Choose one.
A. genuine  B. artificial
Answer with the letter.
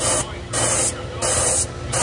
A